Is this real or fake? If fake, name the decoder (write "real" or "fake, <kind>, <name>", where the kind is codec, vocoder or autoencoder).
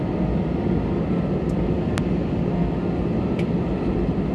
real